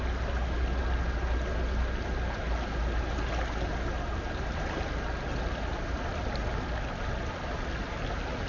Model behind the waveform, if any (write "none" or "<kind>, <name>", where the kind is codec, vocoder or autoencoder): none